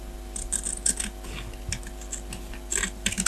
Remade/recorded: recorded